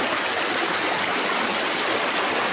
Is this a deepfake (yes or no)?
no